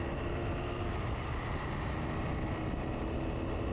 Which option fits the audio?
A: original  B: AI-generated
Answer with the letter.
A